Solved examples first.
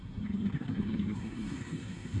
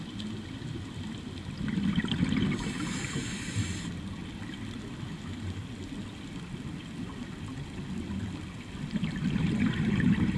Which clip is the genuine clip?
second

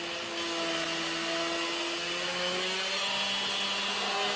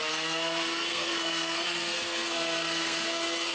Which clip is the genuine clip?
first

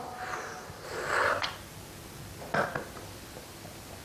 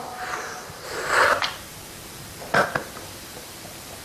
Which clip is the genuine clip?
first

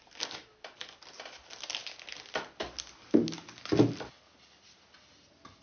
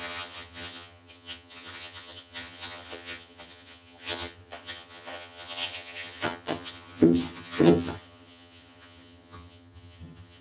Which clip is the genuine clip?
first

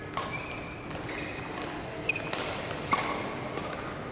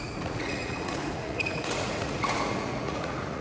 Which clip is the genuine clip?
first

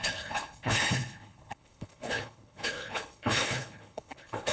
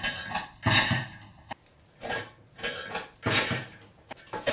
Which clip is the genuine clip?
second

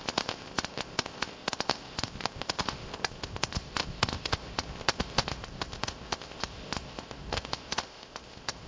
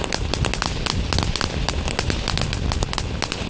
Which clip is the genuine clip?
second